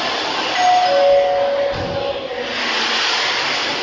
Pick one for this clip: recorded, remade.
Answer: recorded